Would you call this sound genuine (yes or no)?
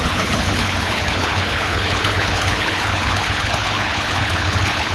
no